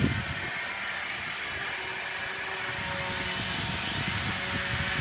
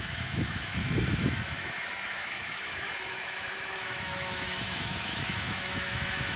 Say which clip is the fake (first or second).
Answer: second